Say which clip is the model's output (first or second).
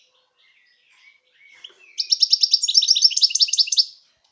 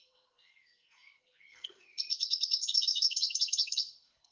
second